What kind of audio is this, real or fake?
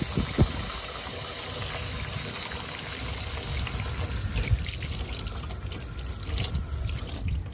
real